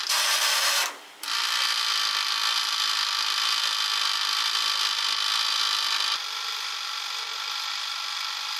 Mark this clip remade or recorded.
remade